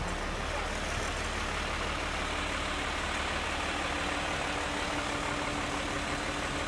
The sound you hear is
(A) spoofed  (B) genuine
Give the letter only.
B